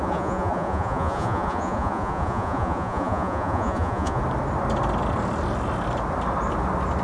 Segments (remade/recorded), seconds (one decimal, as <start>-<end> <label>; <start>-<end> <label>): 0.0-4.2 remade; 4.2-7.0 recorded